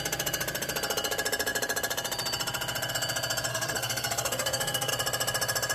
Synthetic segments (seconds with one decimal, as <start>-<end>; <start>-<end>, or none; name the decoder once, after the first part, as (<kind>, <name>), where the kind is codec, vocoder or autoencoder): 3.5-4.9 (codec, SNAC)